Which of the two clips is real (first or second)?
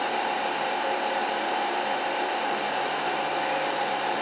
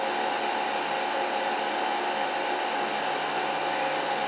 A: second